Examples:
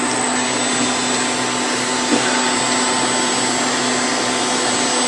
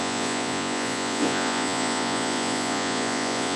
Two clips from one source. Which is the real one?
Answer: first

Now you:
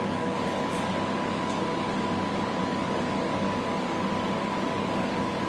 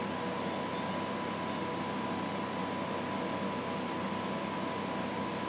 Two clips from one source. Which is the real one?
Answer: second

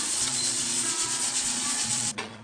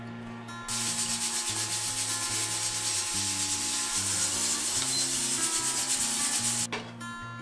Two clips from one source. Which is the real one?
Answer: second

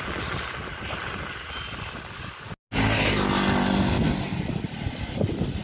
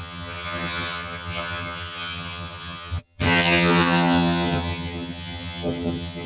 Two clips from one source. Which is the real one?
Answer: first